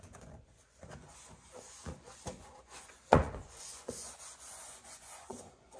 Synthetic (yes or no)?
yes